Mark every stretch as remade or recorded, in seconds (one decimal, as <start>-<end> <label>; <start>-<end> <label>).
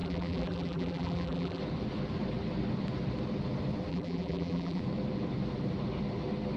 0.0-1.6 remade; 1.6-3.9 recorded; 3.9-4.8 remade; 4.8-6.6 recorded